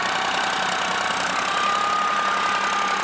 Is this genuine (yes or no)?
yes